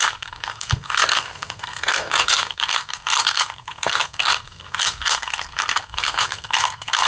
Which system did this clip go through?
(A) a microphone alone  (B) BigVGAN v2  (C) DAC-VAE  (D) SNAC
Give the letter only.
D